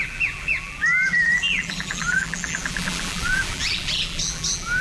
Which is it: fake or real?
fake